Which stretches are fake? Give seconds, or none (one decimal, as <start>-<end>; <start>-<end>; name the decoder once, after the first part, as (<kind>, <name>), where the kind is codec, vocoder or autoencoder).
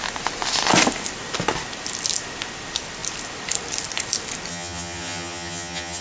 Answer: 4.5-6.0 (vocoder, HiFi-GAN)